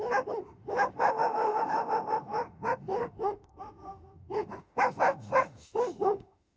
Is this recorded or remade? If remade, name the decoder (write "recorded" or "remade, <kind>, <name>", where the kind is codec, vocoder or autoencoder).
remade, autoencoder, DAC-VAE